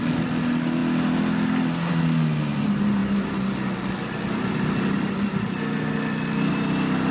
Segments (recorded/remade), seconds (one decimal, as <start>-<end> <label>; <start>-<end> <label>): 0.0-7.1 recorded